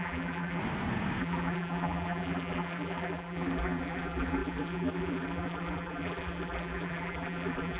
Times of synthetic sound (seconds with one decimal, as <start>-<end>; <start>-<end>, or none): 0.0-0.6; 1.2-7.8